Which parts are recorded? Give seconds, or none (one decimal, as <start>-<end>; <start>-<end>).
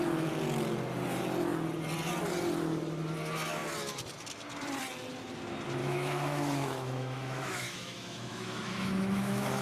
0.0-5.8